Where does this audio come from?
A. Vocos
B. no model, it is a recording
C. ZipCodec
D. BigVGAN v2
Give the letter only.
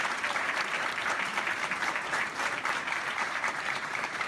D